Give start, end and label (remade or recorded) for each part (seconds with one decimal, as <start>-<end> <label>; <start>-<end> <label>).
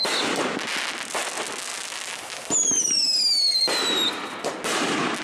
0.0-5.2 recorded